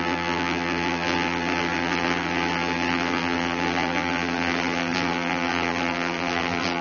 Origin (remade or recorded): remade